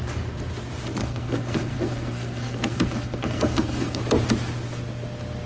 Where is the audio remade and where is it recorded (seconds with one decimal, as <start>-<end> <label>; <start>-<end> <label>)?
0.0-1.0 recorded; 1.0-4.0 remade; 4.0-5.5 recorded